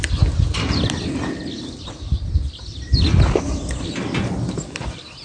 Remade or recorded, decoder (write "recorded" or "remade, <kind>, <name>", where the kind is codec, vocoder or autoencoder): recorded